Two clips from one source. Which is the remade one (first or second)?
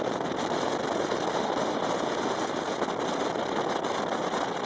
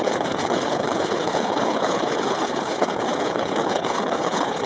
second